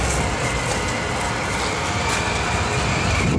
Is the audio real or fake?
real